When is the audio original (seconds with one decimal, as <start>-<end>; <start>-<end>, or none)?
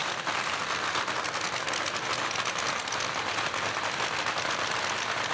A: 0.6-5.3